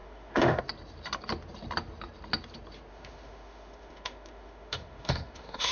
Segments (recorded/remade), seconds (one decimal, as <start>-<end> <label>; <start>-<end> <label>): 0.0-0.6 remade; 0.6-2.9 recorded; 2.9-5.7 remade